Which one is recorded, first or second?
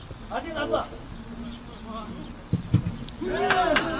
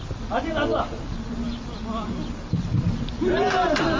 first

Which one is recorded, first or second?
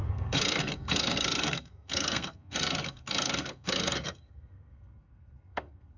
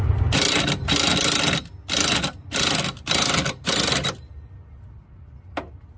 second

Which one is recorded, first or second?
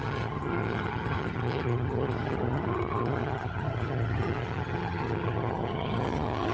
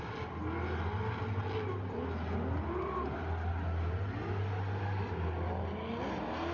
second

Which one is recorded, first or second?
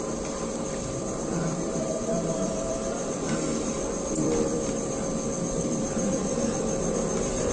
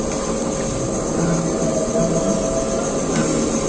second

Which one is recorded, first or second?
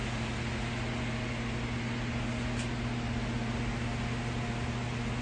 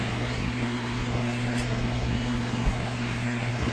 first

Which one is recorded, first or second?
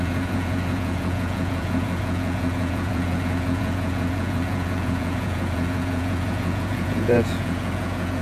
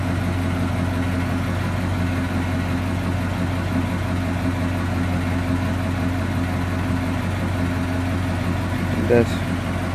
second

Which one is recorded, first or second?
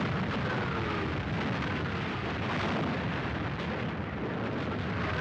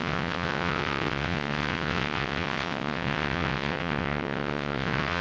first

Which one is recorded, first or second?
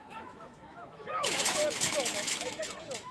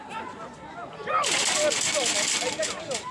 second